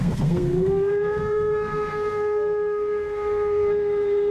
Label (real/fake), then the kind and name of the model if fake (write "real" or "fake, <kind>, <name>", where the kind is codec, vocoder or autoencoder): fake, codec, SNAC